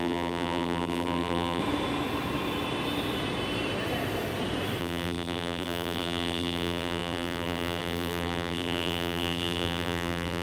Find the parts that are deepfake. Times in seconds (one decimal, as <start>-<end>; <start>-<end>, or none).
0.0-1.6; 4.8-10.4